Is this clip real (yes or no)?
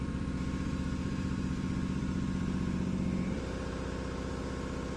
no